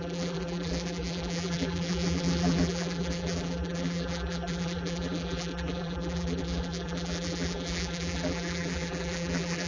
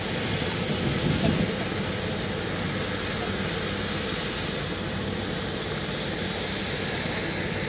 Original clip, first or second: second